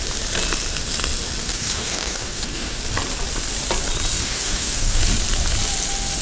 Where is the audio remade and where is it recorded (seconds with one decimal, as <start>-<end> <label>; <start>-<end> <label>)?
0.0-1.4 recorded; 1.4-2.8 remade; 2.8-4.2 recorded; 4.2-5.0 remade; 5.0-6.2 recorded